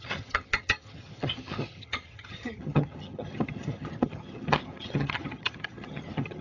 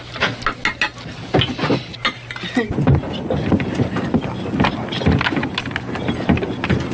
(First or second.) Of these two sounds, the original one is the second